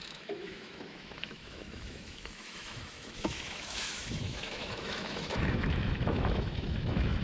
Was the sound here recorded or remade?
remade